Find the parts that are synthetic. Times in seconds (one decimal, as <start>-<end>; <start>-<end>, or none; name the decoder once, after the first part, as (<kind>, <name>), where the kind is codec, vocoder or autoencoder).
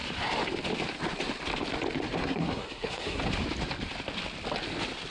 2.2-3.2 (codec, SNAC)